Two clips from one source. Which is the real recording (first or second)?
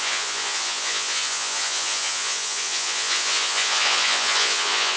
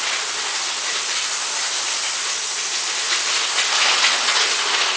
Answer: second